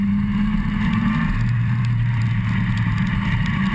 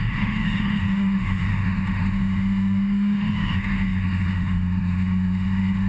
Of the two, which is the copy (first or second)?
second